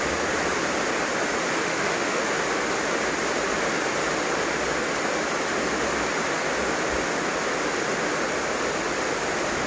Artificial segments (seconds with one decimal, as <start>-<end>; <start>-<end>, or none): 1.6-2.2